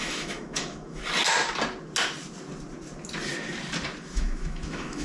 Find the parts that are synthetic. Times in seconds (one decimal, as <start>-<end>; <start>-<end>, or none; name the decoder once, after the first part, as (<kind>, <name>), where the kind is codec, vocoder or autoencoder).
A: 0.0-1.0 (autoencoder, DAC-VAE); 4.0-5.0